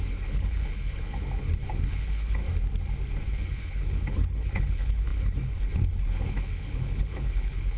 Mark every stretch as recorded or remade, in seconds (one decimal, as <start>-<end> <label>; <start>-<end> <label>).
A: 0.0-2.4 remade; 2.4-3.2 recorded; 3.2-7.8 remade